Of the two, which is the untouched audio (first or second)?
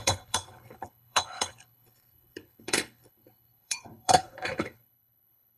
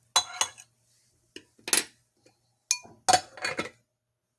second